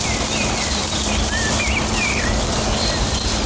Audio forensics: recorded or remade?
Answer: remade